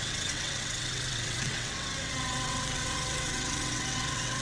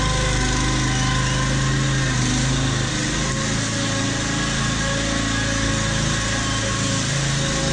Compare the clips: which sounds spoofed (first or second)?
first